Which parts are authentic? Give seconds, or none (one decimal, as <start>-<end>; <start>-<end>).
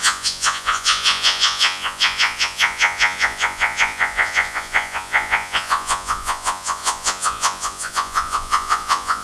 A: none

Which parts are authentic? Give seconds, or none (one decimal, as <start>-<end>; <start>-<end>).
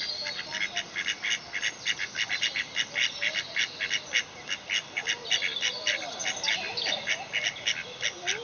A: 0.0-8.4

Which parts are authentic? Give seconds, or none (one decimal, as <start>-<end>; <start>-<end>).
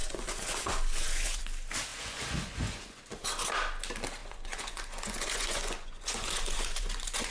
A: 1.4-1.9; 3.0-4.2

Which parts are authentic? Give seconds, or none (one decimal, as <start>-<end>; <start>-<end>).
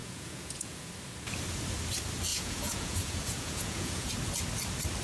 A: 0.9-2.3; 4.1-5.0